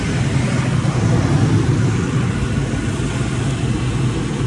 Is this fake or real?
real